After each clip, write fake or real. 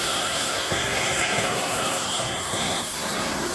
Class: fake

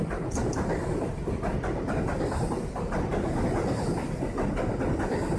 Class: real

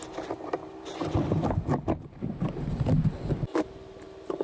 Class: real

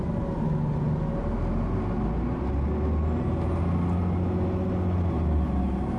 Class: real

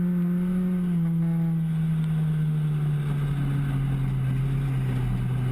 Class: real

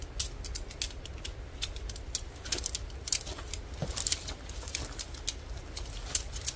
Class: real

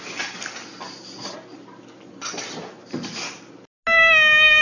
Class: real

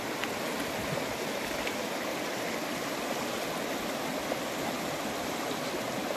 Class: real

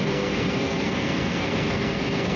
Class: fake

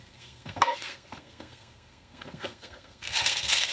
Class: fake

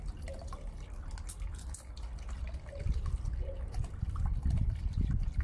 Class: real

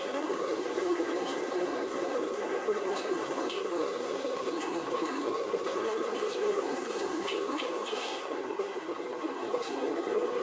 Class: fake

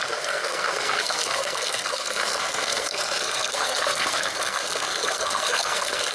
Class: fake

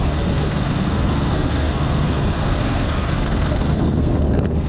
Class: fake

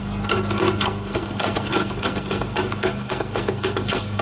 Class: fake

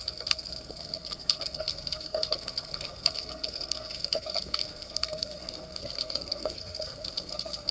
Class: fake